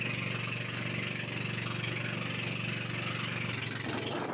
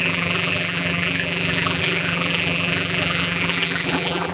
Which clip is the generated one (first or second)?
second